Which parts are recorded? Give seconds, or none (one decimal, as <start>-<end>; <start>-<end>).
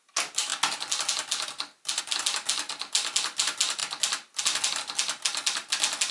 0.0-6.1